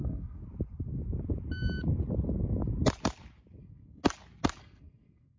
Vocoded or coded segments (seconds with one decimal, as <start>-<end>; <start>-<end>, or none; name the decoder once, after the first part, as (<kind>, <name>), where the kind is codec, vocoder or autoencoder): 0.0-0.4 (codec, SNAC); 3.6-4.0; 4.6-5.4